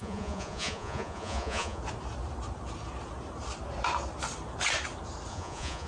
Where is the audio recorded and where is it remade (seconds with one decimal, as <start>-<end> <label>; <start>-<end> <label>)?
0.0-1.8 remade; 1.8-5.3 recorded; 5.3-5.9 remade